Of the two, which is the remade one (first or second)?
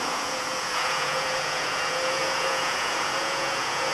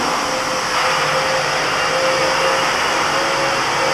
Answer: first